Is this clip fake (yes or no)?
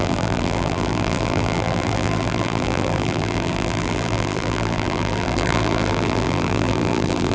yes